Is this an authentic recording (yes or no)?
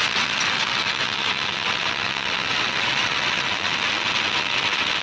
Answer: no